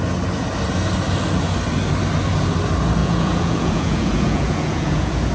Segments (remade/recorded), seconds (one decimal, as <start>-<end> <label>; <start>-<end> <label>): 0.0-3.0 recorded; 3.0-5.3 remade